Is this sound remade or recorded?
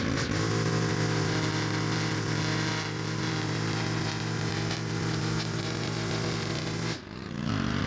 recorded